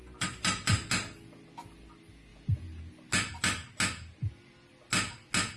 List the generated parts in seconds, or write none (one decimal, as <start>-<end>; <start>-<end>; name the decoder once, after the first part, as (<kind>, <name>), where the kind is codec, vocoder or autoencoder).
2.3-2.8 (vocoder, Vocos)